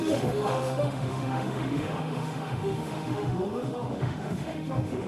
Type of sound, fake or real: fake